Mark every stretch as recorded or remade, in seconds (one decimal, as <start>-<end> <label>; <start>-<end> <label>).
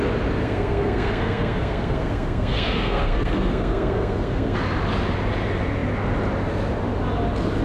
0.0-0.4 recorded; 0.4-4.6 remade; 4.6-7.6 recorded